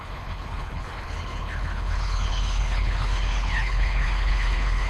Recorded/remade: remade